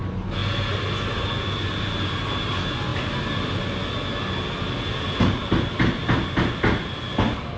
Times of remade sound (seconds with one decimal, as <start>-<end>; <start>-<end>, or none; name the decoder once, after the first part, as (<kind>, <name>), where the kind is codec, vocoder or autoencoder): none